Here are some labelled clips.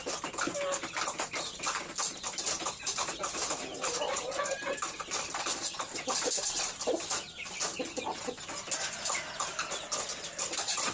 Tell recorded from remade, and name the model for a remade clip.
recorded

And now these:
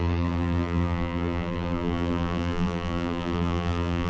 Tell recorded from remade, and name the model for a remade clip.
remade, vocoder, BigVGAN v2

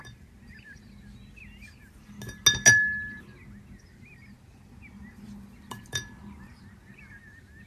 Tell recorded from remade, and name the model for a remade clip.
recorded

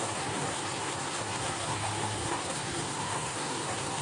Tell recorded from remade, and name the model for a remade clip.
remade, codec, SNAC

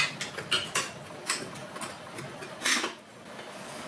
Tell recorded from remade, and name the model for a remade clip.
recorded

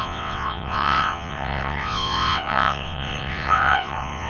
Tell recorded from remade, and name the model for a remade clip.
remade, vocoder, WaveNeXt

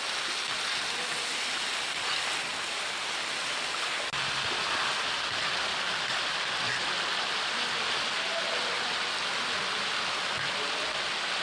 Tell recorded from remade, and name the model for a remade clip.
recorded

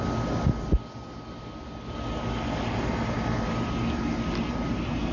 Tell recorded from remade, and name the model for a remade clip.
recorded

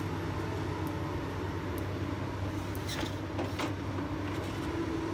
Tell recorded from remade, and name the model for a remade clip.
recorded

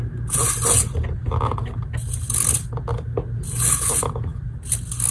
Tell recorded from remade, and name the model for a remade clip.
recorded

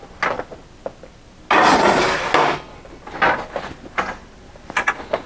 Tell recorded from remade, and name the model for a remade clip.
recorded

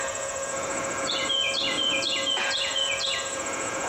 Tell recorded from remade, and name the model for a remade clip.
remade, vocoder, Vocos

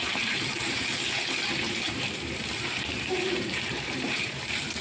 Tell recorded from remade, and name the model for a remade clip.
remade, vocoder, BigVGAN v2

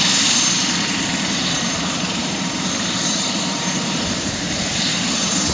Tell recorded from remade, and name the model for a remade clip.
remade, vocoder, BigVGAN v2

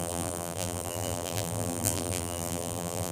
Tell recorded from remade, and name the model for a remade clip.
remade, vocoder, BigVGAN v2